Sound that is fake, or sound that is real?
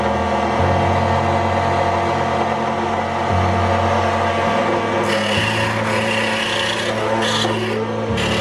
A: real